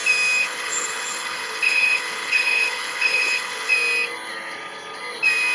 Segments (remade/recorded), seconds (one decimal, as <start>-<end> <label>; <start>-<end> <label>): 0.0-0.4 recorded; 0.4-3.7 remade; 3.7-5.5 recorded